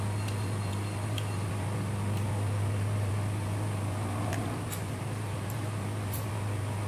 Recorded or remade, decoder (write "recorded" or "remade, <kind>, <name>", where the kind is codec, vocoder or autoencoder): recorded